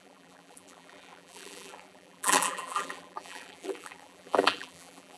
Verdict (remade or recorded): remade